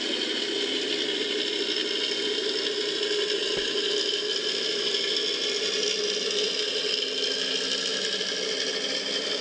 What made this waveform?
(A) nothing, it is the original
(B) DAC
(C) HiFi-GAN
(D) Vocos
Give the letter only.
A